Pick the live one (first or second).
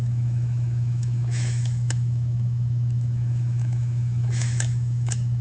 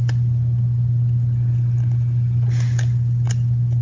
second